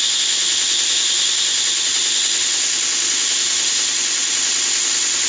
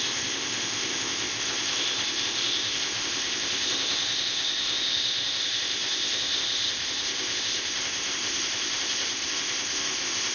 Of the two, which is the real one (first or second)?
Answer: first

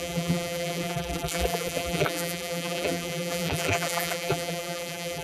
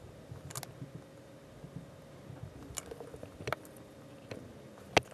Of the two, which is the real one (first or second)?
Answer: second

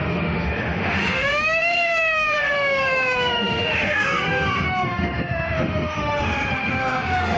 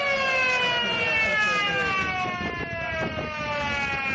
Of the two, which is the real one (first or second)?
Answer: second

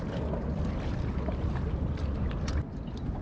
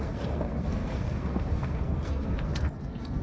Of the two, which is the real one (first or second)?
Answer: first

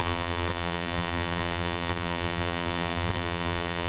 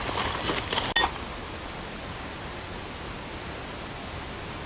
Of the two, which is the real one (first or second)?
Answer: second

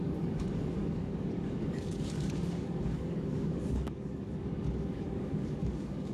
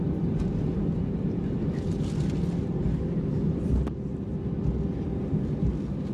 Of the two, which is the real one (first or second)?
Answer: second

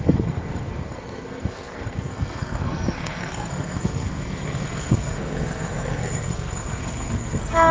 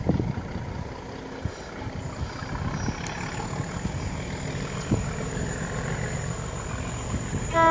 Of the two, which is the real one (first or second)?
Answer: second